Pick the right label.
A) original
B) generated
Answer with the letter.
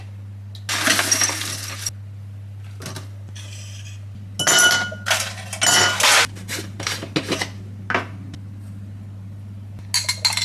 A